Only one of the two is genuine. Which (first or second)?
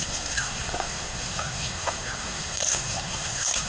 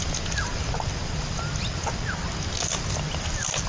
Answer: second